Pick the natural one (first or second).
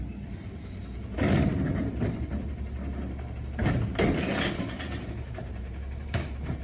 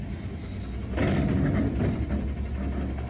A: second